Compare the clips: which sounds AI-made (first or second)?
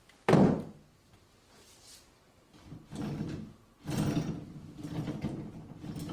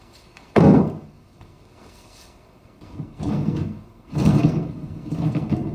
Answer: second